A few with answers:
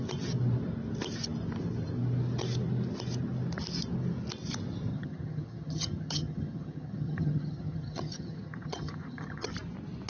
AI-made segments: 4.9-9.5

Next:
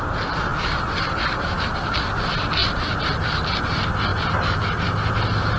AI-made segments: none

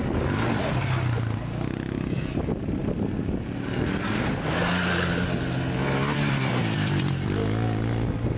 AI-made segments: none

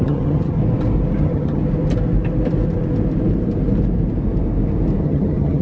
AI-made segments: 0.0-0.6; 1.2-1.6; 5.0-5.6

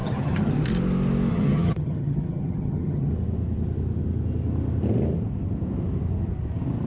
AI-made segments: 0.0-0.5; 1.3-3.1

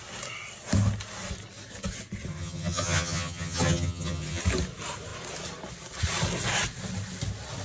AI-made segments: 2.3-4.4

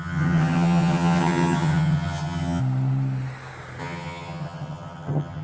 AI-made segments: 0.0-2.6; 3.8-5.4